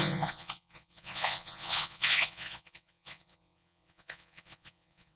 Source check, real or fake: fake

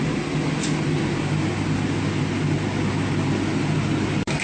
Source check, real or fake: real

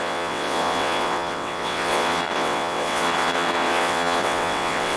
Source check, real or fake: fake